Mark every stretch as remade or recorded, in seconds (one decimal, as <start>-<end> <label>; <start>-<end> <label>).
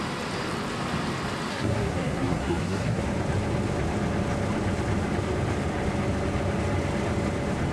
0.0-1.5 recorded; 1.5-3.0 remade; 3.0-7.7 recorded